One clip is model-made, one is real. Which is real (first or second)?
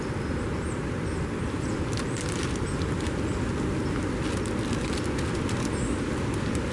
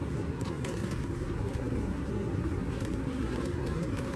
first